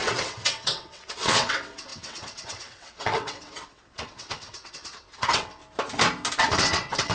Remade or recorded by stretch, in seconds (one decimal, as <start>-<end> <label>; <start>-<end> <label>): 0.0-5.6 remade; 5.6-6.4 recorded; 6.4-7.1 remade